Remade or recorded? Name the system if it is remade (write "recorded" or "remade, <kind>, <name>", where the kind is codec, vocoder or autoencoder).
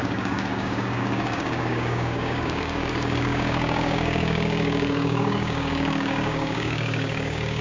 remade, codec, DAC